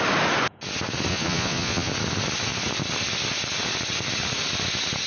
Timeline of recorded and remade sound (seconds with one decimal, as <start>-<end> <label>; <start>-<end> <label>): 0.0-1.1 recorded; 1.1-1.9 remade; 1.9-5.1 recorded